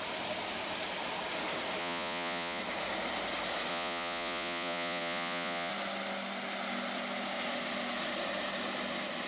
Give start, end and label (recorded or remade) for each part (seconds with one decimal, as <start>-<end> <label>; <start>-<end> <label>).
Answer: 0.0-1.8 recorded; 1.8-2.6 remade; 2.6-3.7 recorded; 3.7-5.7 remade; 5.7-9.3 recorded